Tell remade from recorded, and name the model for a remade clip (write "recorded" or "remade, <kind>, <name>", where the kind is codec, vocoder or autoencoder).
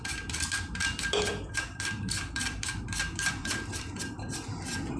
remade, vocoder, BigVGAN v2